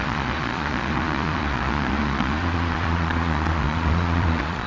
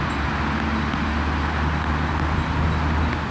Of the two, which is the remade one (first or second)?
first